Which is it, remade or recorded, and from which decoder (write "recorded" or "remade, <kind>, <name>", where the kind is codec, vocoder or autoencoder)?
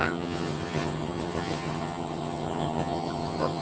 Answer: remade, vocoder, HiFi-GAN